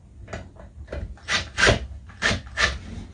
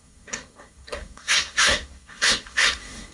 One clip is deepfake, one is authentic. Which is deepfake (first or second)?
second